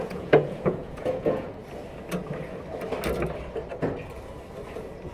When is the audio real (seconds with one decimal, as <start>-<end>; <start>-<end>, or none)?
1.6-5.1